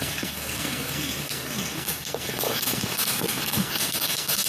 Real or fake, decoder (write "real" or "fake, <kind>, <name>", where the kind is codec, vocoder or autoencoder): fake, codec, SNAC